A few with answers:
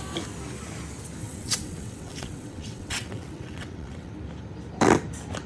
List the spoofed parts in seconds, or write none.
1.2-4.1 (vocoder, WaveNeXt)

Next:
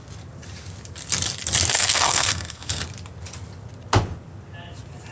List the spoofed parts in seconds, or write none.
1.7-2.8 (codec, SNAC)

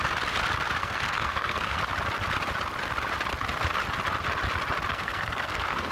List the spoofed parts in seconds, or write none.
0.8-1.8 (codec, SNAC); 4.9-5.9

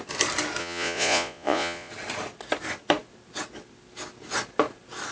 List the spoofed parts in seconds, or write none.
0.6-1.9 (vocoder, Vocos)

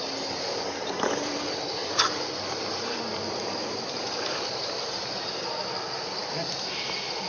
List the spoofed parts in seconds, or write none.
0.0-1.8 (vocoder, BigVGAN v2); 3.9-4.6; 6.2-7.3

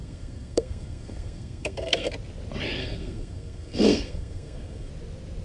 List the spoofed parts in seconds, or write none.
0.0-2.1 (codec, SNAC); 2.8-4.9

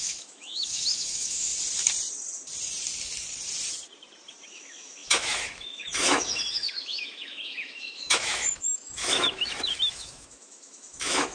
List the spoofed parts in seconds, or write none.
0.0-1.5 (autoencoder, DAC-VAE); 4.5-11.3